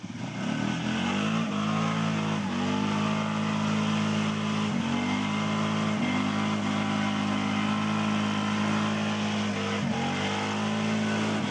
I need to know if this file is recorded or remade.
recorded